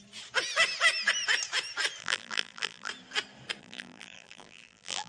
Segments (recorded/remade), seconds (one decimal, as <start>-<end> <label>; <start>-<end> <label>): 0.0-2.0 recorded; 2.0-2.9 remade; 2.9-3.6 recorded; 3.6-5.1 remade